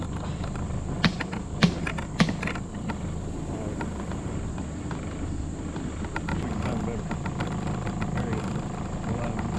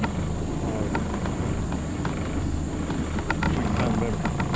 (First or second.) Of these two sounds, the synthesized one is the first